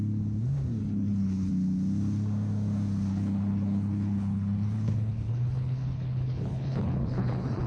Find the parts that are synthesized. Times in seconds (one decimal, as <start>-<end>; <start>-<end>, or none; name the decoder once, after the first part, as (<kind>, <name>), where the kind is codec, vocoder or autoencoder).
0.8-1.5 (codec, HILCodec); 3.1-7.7